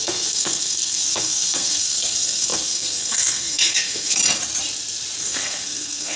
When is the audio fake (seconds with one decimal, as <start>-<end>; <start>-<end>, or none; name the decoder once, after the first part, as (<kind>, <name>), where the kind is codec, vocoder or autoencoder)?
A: 0.0-4.2 (codec, SNAC); 5.2-6.2